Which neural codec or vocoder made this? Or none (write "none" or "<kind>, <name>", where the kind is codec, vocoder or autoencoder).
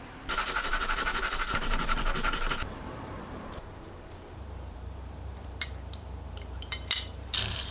vocoder, BigVGAN v2